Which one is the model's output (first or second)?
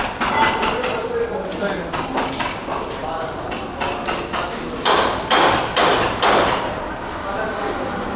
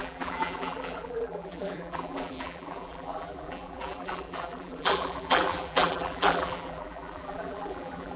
second